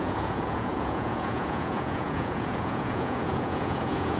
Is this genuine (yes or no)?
no